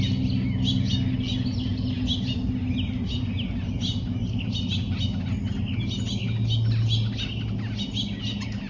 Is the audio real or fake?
real